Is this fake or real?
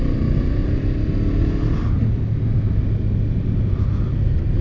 real